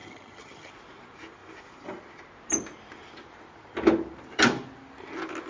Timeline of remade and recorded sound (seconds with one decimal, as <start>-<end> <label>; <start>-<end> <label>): 0.0-0.7 remade; 0.7-5.5 recorded